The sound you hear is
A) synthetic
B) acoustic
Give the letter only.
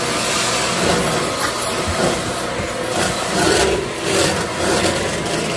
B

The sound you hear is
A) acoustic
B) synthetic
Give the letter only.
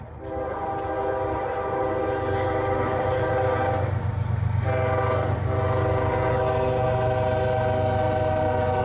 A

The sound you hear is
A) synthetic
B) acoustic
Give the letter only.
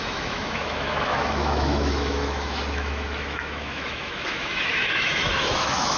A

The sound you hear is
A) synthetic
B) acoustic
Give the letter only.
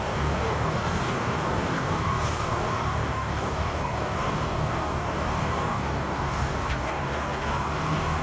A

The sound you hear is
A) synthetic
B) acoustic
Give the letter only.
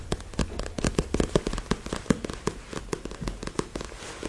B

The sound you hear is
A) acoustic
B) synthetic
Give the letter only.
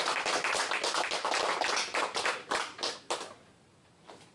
A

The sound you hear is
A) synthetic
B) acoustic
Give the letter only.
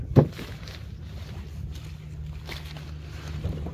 B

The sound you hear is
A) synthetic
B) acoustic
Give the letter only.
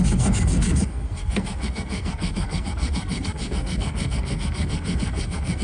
A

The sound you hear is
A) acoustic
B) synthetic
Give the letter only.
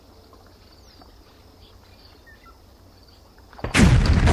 A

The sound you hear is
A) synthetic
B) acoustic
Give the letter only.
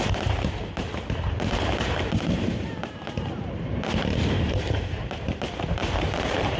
A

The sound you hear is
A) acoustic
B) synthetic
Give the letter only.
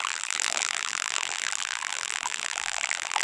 B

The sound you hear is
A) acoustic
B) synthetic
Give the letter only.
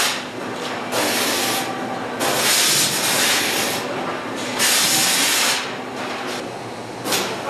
A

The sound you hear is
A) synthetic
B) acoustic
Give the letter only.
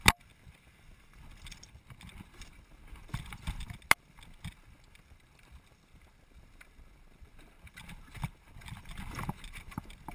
B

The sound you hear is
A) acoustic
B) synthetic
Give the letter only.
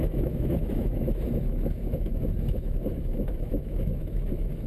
B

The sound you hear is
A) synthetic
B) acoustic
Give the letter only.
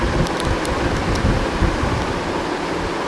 B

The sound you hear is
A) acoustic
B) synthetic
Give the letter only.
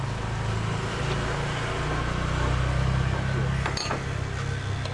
A